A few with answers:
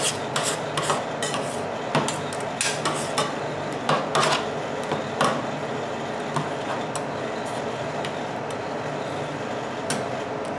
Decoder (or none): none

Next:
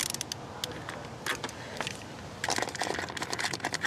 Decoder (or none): none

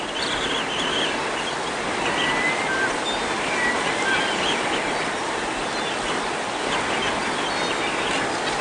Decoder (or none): none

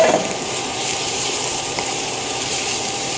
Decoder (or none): vocoder, BigVGAN v2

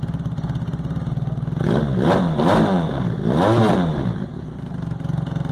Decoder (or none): none